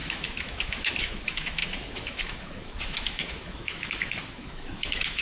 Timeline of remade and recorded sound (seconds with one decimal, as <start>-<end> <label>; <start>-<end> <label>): 0.0-5.2 remade